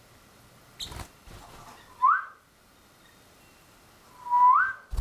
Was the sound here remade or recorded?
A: recorded